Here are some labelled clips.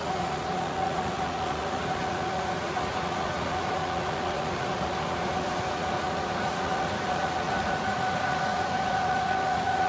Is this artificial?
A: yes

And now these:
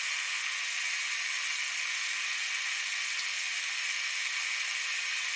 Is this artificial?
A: no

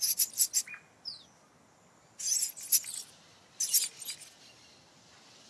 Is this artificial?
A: no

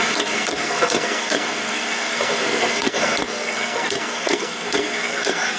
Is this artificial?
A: yes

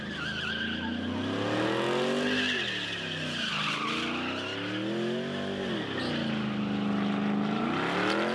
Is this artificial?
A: no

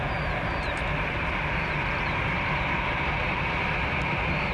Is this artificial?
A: no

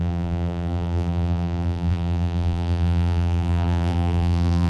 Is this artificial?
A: yes